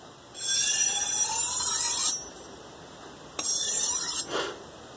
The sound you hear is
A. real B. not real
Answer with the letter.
A